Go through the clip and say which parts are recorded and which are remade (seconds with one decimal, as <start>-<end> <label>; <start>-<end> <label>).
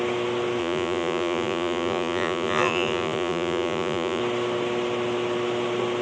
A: 0.0-0.6 recorded; 0.6-4.2 remade; 4.2-6.0 recorded